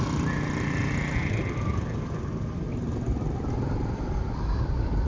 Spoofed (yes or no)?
no